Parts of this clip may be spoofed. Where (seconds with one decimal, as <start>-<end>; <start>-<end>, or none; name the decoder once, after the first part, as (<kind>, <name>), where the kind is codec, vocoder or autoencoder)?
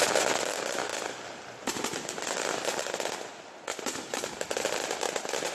0.9-2.8 (vocoder, BigVGAN v2); 3.7-5.1